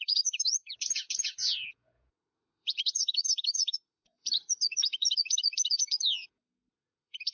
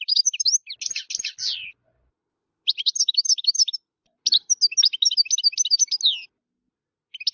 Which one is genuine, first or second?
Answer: second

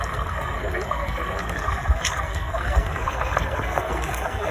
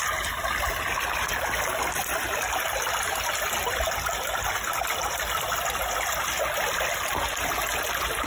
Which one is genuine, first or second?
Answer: second